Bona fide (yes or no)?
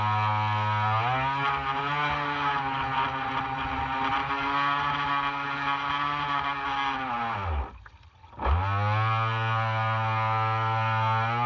yes